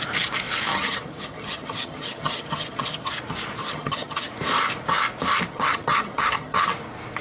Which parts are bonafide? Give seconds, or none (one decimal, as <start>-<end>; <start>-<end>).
0.0-0.7; 3.1-3.6; 4.3-5.5; 6.6-7.2